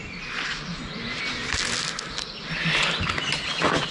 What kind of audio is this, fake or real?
real